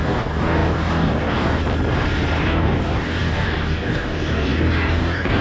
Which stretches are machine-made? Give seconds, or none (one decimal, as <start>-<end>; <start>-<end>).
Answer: 0.0-1.6; 2.4-5.4